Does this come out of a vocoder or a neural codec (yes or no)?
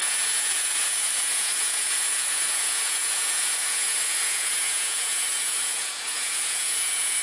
yes